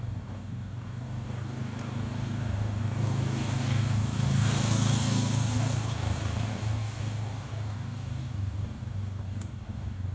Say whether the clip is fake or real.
fake